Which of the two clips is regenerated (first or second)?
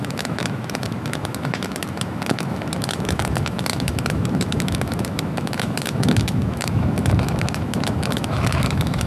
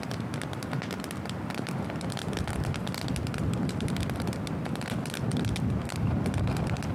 first